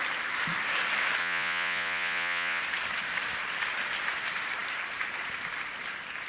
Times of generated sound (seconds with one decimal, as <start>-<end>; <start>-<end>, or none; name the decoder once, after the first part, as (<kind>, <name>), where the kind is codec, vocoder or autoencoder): 1.2-2.6 (vocoder, Vocos)